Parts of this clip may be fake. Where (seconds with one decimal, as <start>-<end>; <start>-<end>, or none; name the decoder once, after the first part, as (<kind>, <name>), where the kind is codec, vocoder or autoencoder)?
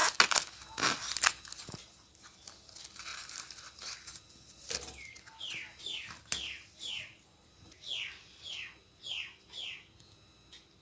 none